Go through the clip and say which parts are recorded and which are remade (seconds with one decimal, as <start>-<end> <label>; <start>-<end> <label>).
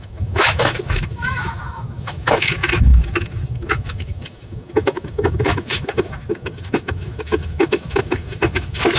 0.0-9.0 remade